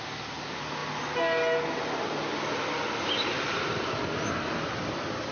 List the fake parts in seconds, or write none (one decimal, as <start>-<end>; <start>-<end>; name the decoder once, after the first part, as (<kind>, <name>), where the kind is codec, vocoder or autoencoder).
none